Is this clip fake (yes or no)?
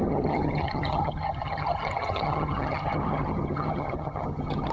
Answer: yes